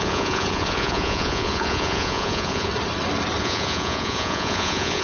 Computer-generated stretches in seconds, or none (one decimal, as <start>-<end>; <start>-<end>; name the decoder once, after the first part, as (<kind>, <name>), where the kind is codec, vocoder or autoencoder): 0.0-2.7 (vocoder, Vocos); 3.4-5.0

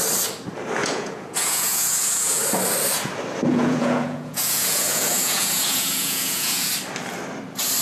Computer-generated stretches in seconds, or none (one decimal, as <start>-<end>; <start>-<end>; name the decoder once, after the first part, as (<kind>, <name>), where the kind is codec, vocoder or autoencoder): 0.8-2.4 (vocoder, Vocos); 3.5-6.7

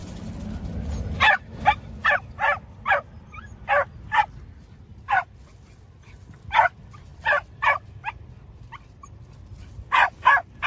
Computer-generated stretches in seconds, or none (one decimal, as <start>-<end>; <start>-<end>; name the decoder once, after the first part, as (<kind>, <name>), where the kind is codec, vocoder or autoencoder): none

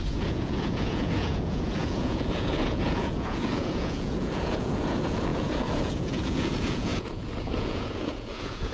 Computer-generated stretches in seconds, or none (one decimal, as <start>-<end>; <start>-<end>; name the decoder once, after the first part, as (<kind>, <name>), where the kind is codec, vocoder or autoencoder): 0.0-8.7 (vocoder, Vocos)

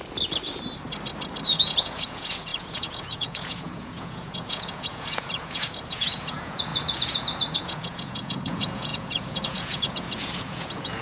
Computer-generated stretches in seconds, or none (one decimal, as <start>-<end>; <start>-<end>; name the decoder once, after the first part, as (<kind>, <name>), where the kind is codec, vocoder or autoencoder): 1.5-11.0 (vocoder, Vocos)

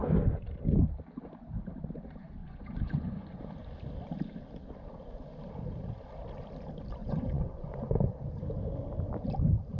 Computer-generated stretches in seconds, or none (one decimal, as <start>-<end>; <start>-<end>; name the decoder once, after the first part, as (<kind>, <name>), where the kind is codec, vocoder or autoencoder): 2.4-3.4 (vocoder, Vocos); 7.0-7.7